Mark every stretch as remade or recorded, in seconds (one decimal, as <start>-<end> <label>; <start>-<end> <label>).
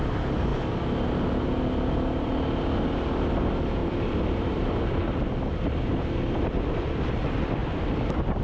0.0-3.8 recorded; 3.8-7.1 remade; 7.1-7.6 recorded; 7.6-8.4 remade